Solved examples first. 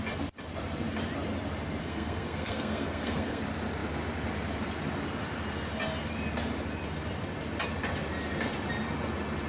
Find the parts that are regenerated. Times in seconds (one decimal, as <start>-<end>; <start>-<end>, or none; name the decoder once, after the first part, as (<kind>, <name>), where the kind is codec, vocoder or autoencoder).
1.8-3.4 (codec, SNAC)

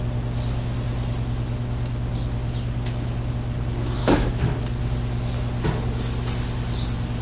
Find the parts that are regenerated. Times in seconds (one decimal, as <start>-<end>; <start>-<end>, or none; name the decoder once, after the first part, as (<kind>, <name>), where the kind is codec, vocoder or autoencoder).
4.0-4.6 (autoencoder, DAC-VAE)

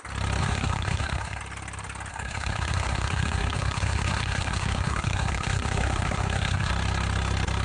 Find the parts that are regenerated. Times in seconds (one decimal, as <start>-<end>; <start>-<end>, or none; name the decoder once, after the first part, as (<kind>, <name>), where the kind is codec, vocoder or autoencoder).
0.4-1.4 (codec, SNAC); 2.1-6.7